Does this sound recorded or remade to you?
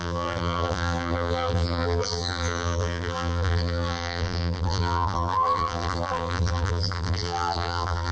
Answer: remade